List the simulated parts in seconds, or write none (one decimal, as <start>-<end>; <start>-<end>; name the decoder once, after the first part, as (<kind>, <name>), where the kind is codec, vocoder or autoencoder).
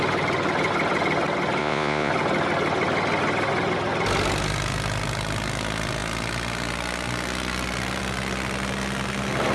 1.6-2.1 (vocoder, Vocos)